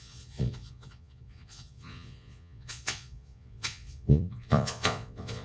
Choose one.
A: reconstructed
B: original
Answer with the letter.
A